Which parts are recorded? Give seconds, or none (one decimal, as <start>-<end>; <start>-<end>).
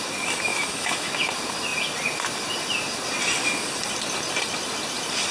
0.0-0.5; 1.1-5.3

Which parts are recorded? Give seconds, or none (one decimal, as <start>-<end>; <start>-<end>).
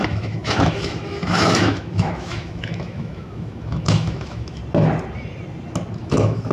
4.6-6.0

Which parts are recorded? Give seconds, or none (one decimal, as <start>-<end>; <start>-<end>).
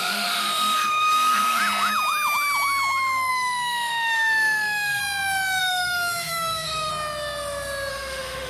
1.6-3.3; 5.0-5.6; 6.9-7.9